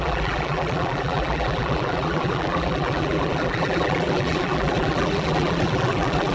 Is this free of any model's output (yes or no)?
no